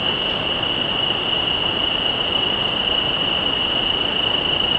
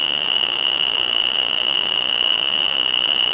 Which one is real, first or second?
first